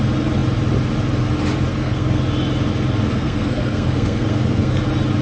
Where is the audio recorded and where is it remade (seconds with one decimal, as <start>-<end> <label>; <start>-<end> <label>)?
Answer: 0.0-1.7 recorded; 1.7-2.2 remade; 2.2-3.1 recorded; 3.1-4.8 remade; 4.8-5.2 recorded